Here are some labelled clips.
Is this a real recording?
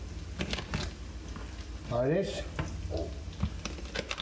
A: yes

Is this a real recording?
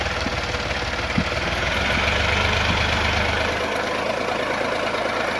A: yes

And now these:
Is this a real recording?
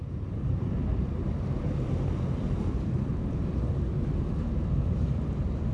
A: no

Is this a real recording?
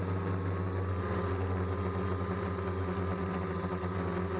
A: yes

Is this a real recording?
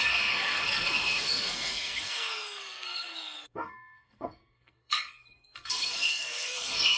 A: no